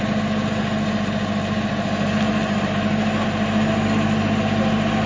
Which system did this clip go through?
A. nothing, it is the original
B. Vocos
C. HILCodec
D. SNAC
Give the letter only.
A